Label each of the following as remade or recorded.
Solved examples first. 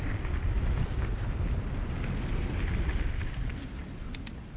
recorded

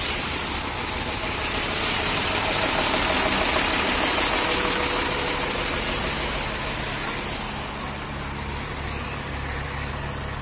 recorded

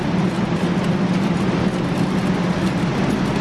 recorded